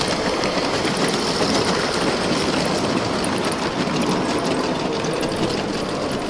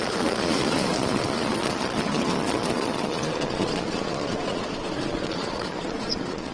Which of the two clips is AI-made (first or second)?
second